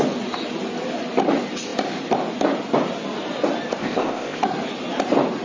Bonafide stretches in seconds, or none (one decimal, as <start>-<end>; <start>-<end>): 0.0-3.8; 4.4-5.4